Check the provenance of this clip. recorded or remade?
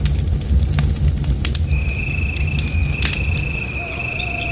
recorded